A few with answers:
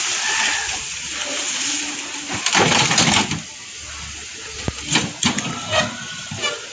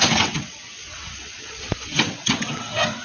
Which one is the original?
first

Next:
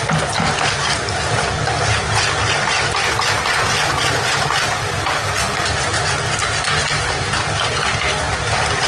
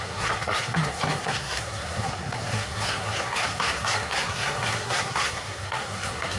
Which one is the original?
first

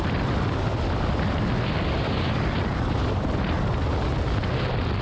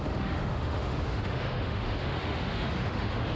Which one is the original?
first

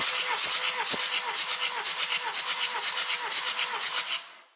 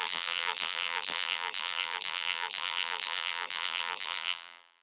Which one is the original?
first